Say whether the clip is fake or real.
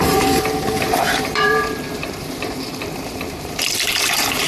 fake